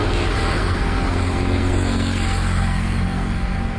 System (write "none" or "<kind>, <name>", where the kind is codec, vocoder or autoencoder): codec, SNAC